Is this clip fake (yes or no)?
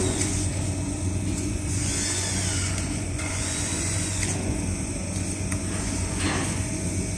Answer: yes